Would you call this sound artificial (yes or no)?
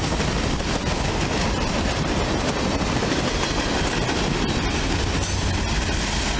no